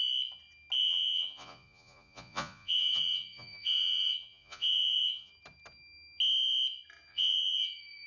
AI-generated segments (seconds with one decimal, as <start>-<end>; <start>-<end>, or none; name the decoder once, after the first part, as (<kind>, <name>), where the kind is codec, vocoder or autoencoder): 0.8-5.3 (vocoder, Vocos); 7.1-8.1